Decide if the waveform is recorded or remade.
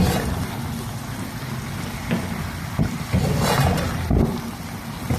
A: recorded